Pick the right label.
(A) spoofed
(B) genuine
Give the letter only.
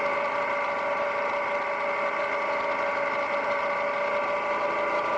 B